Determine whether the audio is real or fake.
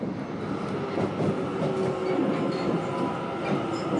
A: real